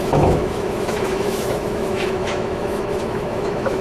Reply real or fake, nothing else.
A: fake